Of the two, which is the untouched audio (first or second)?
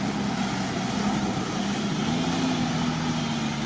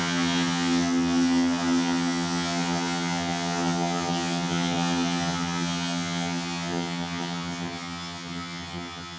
first